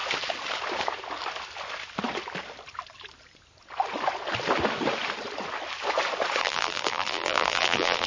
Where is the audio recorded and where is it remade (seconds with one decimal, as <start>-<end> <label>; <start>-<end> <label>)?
0.0-6.4 recorded; 6.4-8.1 remade